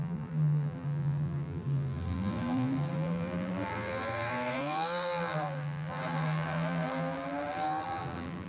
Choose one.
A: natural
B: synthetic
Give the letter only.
B